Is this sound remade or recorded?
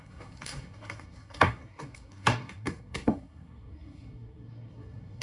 remade